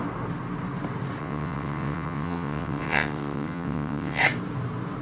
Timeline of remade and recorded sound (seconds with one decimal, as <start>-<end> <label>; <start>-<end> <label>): 0.0-1.2 recorded; 1.2-4.2 remade; 4.2-5.0 recorded